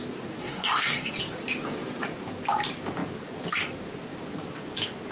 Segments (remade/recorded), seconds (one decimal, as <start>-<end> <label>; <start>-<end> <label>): 0.0-0.4 recorded; 0.4-1.1 remade; 1.1-5.1 recorded